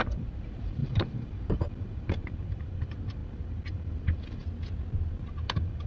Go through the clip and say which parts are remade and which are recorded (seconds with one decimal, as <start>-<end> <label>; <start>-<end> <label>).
0.0-4.4 remade; 4.4-5.2 recorded; 5.2-5.9 remade